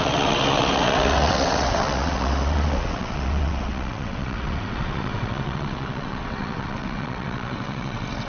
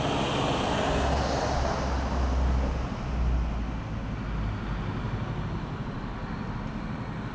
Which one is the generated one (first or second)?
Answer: first